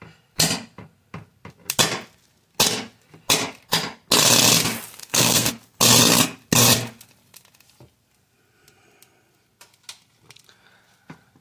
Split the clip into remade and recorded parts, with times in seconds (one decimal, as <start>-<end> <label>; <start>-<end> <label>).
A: 0.0-5.0 recorded; 5.0-5.5 remade; 5.5-11.4 recorded